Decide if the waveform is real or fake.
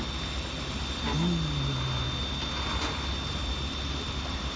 real